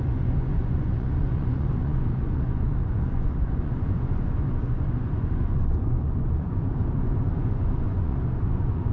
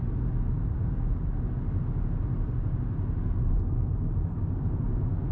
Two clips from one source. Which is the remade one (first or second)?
first